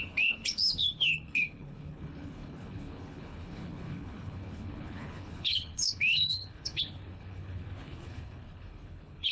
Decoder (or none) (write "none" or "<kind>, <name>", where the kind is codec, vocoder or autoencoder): codec, HILCodec